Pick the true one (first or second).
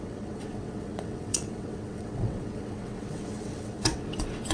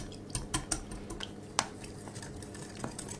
second